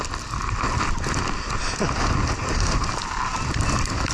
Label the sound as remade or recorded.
recorded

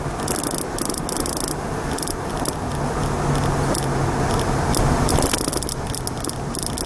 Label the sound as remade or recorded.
recorded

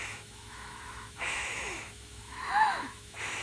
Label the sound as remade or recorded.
remade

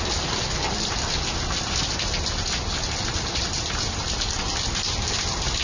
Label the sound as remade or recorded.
recorded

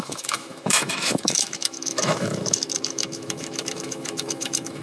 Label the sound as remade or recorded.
remade